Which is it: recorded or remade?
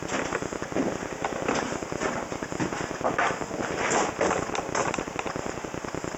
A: recorded